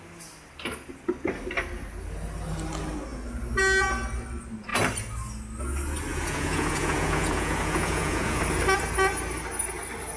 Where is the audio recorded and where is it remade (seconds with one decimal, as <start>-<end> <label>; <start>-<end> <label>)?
0.0-6.1 recorded; 6.1-8.4 remade; 8.4-10.2 recorded